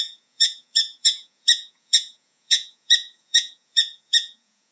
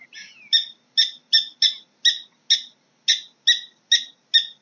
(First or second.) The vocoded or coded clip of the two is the first